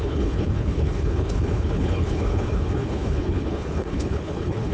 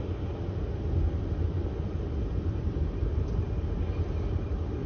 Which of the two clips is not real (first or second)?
first